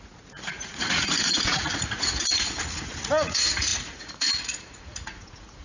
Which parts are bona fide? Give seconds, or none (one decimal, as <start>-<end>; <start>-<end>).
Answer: none